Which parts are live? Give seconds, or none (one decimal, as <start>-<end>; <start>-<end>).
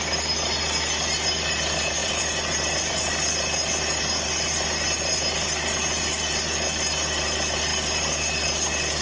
0.0-2.0; 3.1-9.0